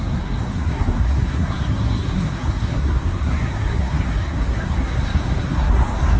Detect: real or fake fake